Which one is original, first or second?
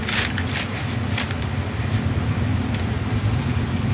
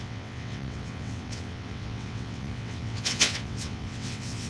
first